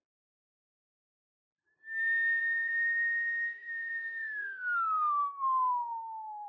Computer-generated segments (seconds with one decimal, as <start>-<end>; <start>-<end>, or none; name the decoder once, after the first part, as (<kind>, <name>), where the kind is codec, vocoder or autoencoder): 2.4-6.5 (codec, SNAC)